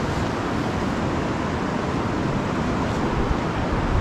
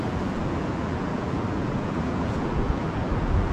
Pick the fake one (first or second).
second